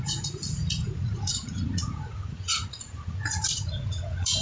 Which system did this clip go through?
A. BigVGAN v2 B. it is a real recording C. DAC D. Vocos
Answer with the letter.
D